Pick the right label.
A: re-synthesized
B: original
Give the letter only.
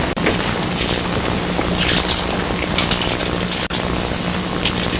B